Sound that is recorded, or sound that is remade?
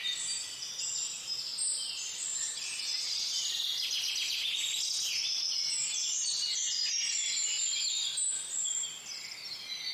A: recorded